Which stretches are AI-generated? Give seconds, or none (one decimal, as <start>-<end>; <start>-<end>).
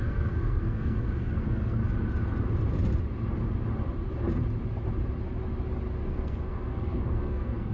0.0-1.8; 6.1-7.7